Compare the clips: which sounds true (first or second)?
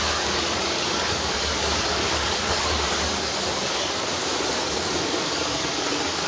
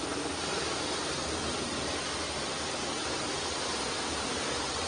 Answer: second